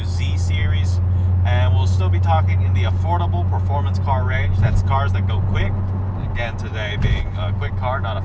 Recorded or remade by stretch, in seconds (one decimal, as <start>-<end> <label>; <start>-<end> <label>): 0.0-8.2 recorded